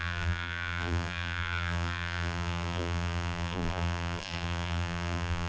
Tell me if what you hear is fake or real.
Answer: fake